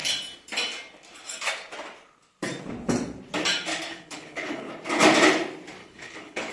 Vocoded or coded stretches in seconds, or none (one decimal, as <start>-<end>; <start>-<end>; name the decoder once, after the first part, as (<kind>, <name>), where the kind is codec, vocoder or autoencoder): 3.9-4.7 (codec, HILCodec); 5.8-6.5